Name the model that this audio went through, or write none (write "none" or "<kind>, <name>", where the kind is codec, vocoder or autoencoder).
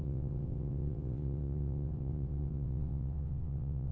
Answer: vocoder, WaveNeXt